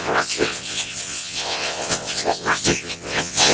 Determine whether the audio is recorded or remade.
remade